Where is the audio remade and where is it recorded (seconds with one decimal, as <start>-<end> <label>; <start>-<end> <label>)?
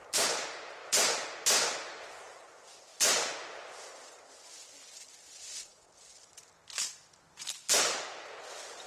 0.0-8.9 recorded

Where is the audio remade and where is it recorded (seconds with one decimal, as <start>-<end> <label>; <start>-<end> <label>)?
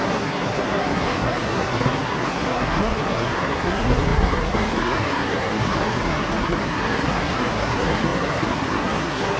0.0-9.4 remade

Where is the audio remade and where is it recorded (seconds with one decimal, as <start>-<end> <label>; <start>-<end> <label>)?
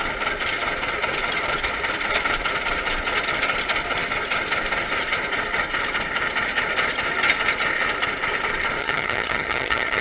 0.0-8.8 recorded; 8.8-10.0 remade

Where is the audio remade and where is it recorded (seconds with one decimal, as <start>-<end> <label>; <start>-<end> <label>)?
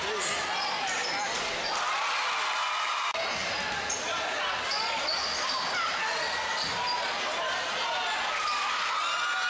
0.0-9.5 recorded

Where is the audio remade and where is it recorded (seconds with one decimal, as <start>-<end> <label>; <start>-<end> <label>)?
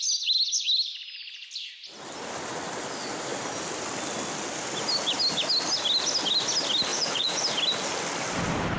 0.0-6.9 recorded; 6.9-7.4 remade; 7.4-8.8 recorded